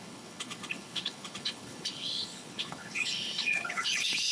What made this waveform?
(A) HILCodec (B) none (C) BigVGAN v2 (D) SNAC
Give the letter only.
A